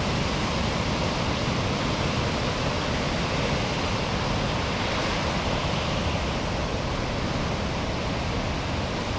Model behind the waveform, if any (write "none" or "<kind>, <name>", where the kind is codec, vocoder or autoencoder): none